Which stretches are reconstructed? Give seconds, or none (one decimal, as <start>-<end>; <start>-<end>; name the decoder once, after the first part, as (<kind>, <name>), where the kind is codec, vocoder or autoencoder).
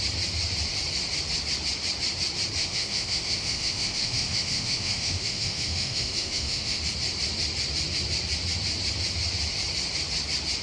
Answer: 2.6-6.8 (autoencoder, DAC-VAE)